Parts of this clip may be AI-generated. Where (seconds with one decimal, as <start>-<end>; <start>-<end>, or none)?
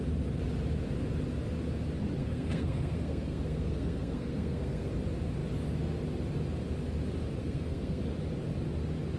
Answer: 2.2-4.9; 7.4-8.0